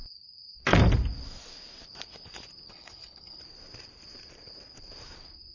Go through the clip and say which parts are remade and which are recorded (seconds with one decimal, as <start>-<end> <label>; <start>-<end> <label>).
0.0-2.7 recorded; 2.7-3.4 remade; 3.4-5.5 recorded